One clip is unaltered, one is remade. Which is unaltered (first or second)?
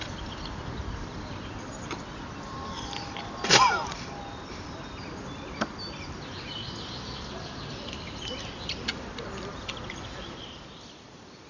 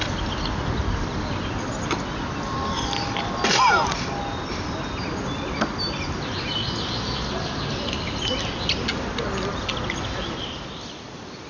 second